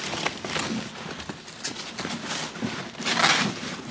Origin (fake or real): real